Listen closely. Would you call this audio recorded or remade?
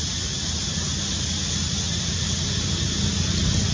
recorded